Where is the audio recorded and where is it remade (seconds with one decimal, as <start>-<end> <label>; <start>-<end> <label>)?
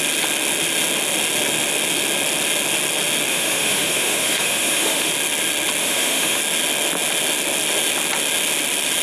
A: 0.0-3.3 recorded; 3.3-5.1 remade; 5.1-5.8 recorded; 5.8-6.4 remade; 6.4-9.0 recorded